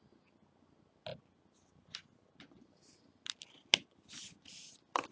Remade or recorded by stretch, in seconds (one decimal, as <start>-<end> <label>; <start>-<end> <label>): 0.0-5.1 recorded